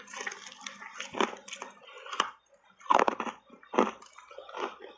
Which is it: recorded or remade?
recorded